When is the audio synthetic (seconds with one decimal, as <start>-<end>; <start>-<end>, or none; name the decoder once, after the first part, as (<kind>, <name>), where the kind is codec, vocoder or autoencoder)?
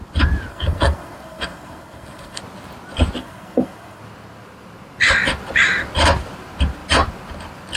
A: 0.5-2.4 (codec, SNAC); 3.2-4.0